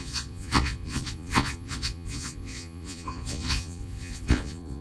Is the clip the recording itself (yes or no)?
no